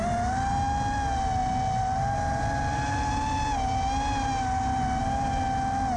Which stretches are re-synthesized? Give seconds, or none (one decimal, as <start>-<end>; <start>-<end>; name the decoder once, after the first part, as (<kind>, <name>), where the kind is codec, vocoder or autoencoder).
none